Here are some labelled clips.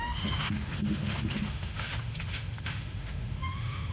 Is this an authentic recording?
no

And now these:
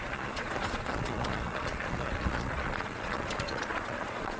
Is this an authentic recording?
no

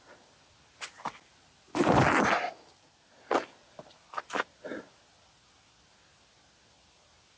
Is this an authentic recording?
yes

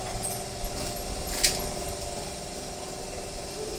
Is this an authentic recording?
yes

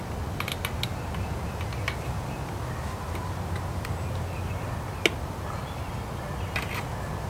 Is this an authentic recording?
yes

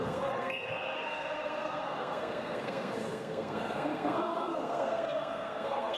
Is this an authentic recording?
no